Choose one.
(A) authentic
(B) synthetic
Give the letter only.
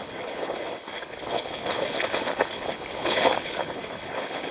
B